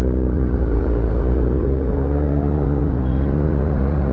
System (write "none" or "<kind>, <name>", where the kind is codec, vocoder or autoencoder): vocoder, Vocos